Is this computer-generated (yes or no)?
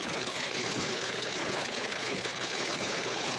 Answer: yes